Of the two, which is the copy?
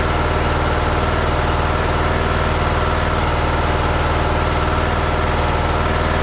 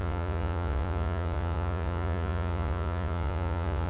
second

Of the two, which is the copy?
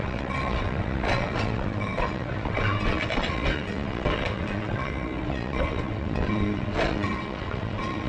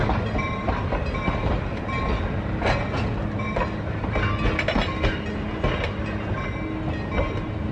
first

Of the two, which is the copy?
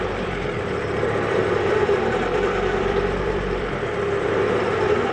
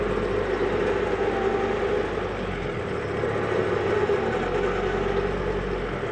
first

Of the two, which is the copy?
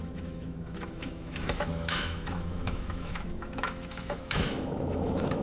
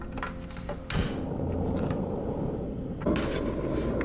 first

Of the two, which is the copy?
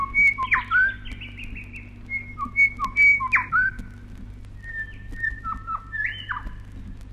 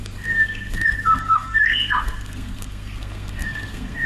second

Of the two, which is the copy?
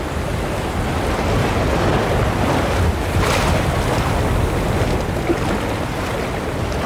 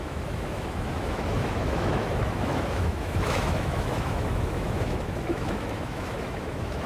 second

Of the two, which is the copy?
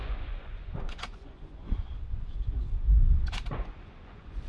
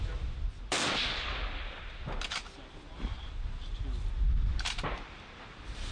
first